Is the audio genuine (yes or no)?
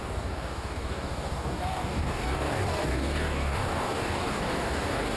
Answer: no